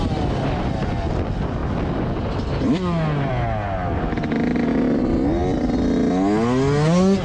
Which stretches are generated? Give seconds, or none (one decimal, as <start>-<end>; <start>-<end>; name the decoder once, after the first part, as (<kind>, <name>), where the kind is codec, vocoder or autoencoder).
none